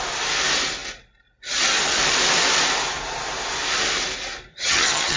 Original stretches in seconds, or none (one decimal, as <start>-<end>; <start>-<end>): 0.0-4.5